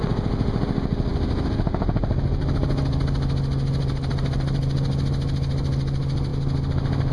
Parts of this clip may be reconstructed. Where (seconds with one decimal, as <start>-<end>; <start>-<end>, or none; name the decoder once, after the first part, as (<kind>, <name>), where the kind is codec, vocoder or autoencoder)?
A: none